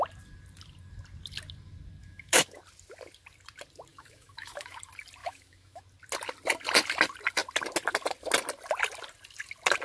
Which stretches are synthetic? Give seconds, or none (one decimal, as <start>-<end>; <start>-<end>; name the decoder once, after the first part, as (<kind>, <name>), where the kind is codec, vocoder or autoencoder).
2.0-2.6 (autoencoder, DAC-VAE); 3.9-4.8; 5.2-5.8